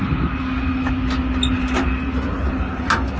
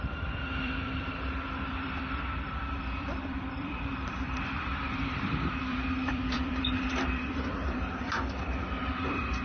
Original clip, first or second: first